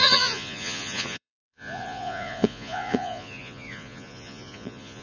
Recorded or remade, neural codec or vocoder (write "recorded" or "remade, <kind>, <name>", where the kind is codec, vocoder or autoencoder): remade, vocoder, Vocos